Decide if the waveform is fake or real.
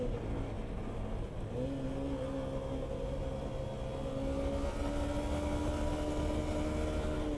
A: real